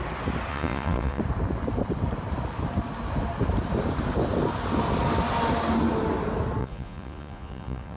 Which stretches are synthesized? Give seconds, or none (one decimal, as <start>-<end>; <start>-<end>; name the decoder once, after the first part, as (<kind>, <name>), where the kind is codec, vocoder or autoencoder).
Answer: 0.5-1.2 (vocoder, Vocos); 6.6-8.0